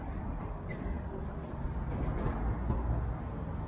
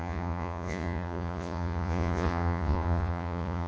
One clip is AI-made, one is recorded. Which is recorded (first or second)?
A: first